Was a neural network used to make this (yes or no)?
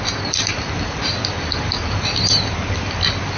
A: no